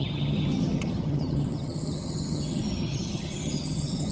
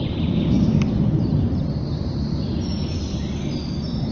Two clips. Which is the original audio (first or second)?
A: second